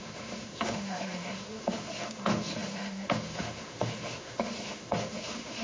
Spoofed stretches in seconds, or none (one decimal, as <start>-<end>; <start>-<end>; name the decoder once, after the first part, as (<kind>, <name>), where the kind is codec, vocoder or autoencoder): 0.0-5.6 (autoencoder, DAC-VAE)